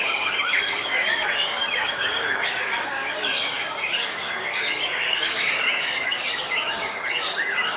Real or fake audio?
fake